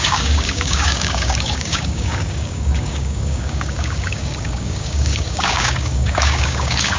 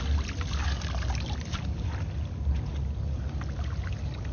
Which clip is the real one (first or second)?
second